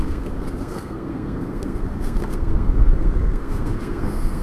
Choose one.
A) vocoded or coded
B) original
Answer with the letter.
A